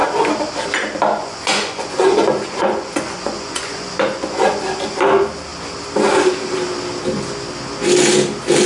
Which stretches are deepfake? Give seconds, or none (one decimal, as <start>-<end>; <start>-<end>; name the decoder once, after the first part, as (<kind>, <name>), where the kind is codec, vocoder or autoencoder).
1.2-4.6 (vocoder, Vocos)

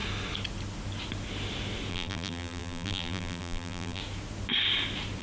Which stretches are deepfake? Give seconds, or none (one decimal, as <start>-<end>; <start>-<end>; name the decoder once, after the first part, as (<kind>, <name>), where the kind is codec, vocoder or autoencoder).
1.9-4.0 (vocoder, BigVGAN v2)

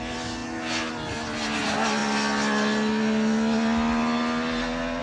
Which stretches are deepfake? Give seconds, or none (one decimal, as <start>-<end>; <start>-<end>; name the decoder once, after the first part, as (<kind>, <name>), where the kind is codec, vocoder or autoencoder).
none

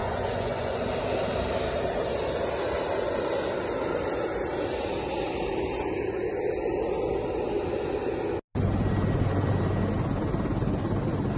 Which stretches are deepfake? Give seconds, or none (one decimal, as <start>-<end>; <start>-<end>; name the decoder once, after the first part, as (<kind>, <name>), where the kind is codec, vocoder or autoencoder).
0.0-0.8 (vocoder, Vocos)

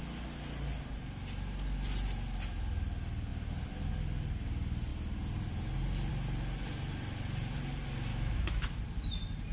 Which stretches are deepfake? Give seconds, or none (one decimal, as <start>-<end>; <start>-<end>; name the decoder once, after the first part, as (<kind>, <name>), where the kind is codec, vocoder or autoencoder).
8.1-8.8 (autoencoder, DAC-VAE)